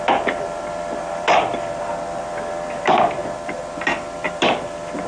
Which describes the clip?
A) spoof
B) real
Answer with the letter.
A